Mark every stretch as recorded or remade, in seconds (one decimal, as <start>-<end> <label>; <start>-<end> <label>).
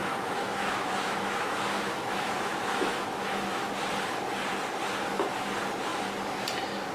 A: 0.0-3.7 remade; 3.7-6.9 recorded